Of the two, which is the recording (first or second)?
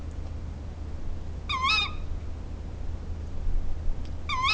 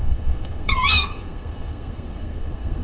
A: first